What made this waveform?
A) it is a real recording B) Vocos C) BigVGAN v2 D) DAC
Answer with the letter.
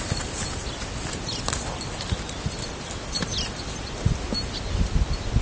A